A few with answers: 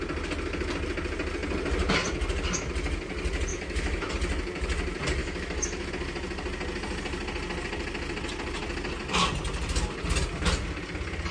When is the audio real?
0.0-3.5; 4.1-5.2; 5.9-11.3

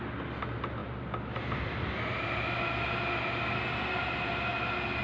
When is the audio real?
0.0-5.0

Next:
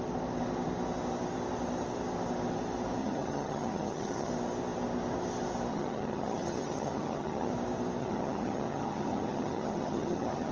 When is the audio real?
0.0-3.0; 4.3-5.7; 7.5-8.0